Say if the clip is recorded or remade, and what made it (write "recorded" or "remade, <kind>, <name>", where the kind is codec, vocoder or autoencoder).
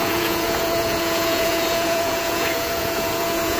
remade, vocoder, Vocos